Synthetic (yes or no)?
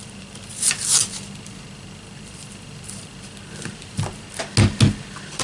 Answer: no